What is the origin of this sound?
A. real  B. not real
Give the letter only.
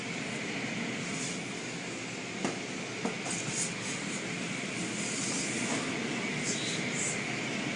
A